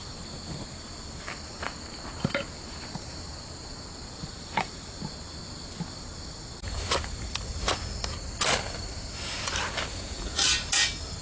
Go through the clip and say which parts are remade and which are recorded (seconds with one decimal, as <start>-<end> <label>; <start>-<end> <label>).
0.0-9.9 recorded; 9.9-10.4 remade; 10.4-11.2 recorded